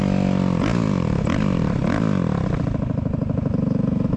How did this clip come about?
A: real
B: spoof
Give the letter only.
A